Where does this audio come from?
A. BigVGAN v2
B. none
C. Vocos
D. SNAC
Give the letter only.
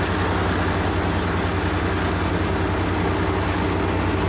B